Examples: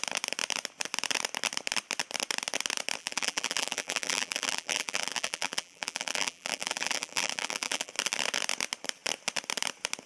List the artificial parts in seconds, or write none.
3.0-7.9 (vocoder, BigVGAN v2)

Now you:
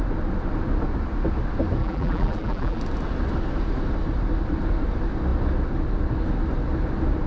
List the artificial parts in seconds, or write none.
1.8-2.8 (vocoder, BigVGAN v2)

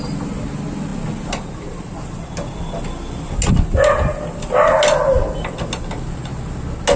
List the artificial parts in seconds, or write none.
none

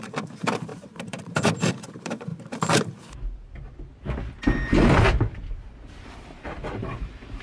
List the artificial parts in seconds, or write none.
0.0-2.3 (vocoder, BigVGAN v2); 5.6-7.4

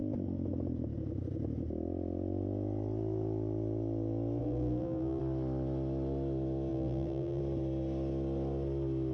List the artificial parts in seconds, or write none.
4.4-5.2 (vocoder, BigVGAN v2); 6.7-7.4

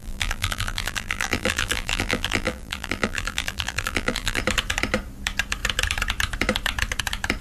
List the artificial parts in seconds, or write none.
0.0-4.4 (vocoder, BigVGAN v2)

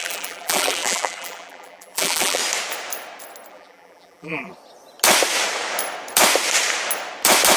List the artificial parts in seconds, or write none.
0.0-2.4 (vocoder, BigVGAN v2); 3.5-4.5

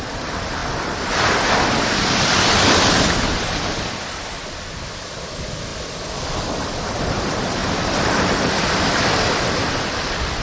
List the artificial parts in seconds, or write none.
7.6-8.5 (vocoder, BigVGAN v2)